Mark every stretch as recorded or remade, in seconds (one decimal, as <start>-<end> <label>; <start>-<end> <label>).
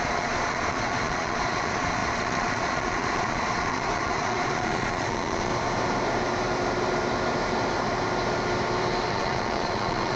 0.0-5.5 remade; 5.5-9.1 recorded; 9.1-10.2 remade